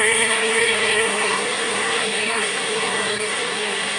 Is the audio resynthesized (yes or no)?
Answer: yes